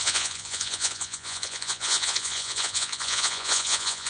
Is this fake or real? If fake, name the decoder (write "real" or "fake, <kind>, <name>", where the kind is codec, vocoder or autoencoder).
fake, vocoder, Vocos